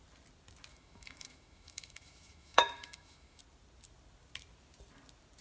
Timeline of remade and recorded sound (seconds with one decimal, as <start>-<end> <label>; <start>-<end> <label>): 0.0-0.7 recorded; 0.7-3.4 remade; 3.4-5.4 recorded